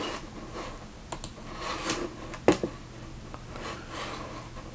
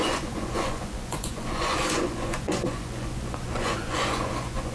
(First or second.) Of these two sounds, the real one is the first